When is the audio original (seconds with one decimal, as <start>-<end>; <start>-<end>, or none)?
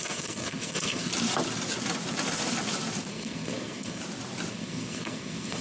1.1-3.1; 4.0-4.5